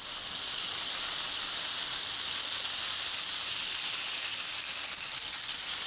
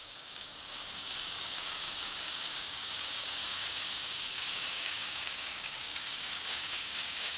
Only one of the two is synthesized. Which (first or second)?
second